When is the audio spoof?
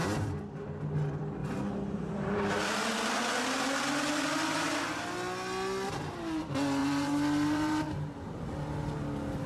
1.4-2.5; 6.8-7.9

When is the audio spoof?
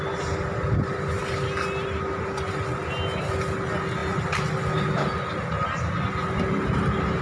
none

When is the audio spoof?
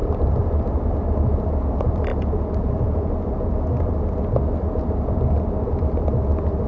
none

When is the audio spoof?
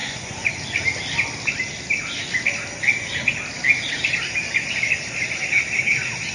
0.0-0.5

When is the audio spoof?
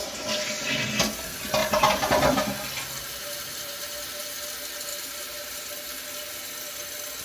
1.6-2.1; 3.2-4.2; 4.9-5.7